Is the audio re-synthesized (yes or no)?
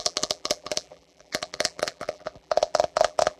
yes